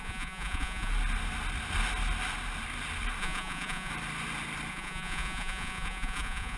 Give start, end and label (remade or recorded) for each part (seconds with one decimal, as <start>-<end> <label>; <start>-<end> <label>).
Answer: 0.0-0.9 remade; 0.9-3.2 recorded; 3.2-3.9 remade; 3.9-4.7 recorded; 4.7-6.6 remade